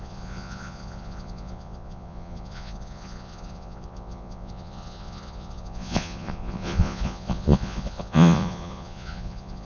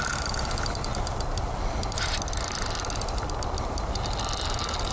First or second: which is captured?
second